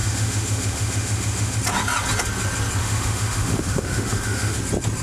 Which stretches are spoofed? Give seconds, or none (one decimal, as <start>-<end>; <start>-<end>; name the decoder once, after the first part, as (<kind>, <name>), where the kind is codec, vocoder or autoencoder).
0.0-1.6 (autoencoder, DAC-VAE); 2.8-4.6